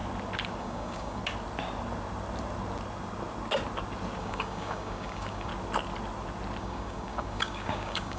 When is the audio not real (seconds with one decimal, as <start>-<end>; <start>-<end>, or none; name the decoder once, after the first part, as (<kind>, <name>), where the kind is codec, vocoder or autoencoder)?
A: 0.6-1.2 (codec, DAC); 4.2-5.5; 6.6-8.2